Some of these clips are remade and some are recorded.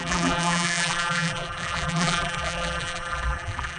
remade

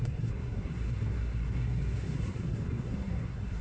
remade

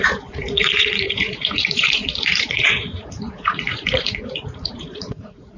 remade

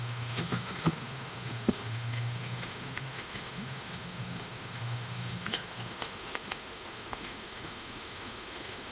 remade